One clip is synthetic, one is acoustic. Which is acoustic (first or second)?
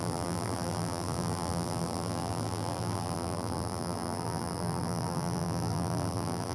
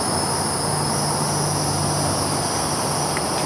second